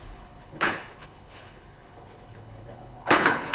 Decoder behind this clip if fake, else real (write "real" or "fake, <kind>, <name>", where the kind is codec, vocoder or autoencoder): fake, codec, HILCodec